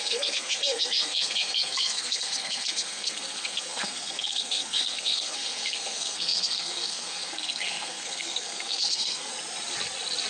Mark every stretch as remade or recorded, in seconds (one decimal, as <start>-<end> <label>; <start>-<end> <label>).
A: 0.0-9.3 remade; 9.3-10.3 recorded